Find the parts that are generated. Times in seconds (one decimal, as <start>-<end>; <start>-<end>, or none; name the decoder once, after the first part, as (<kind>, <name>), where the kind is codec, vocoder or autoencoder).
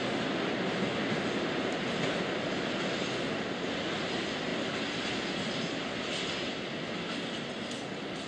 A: none